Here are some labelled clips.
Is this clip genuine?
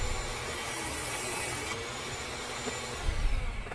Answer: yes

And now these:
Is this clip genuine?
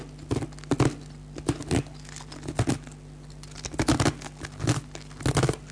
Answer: yes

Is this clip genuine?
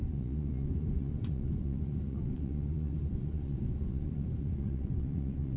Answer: no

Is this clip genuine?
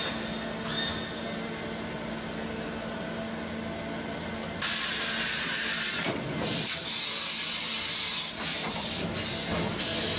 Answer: yes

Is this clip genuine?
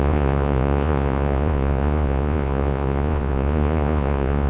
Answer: no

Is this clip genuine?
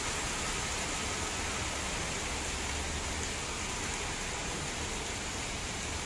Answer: yes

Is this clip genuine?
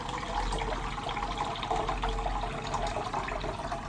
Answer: yes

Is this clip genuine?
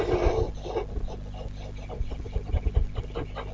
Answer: yes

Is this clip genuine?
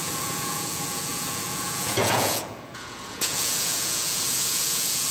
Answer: no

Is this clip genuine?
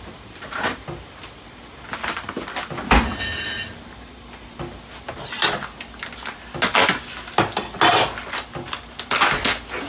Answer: yes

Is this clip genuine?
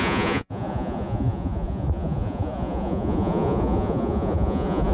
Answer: no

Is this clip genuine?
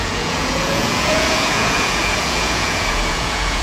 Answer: no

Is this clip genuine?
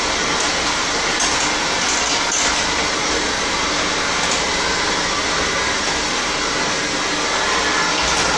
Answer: yes